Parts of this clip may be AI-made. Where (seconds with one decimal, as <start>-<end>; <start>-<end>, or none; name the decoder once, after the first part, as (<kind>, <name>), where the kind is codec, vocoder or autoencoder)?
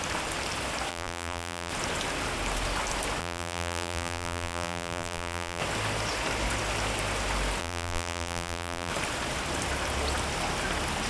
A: 0.9-1.7 (vocoder, BigVGAN v2); 3.2-5.6; 7.6-8.9